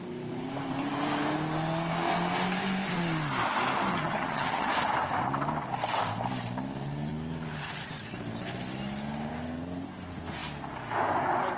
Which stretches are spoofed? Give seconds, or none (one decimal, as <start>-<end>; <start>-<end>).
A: 3.9-4.7